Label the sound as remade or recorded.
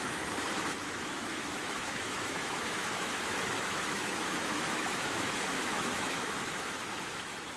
remade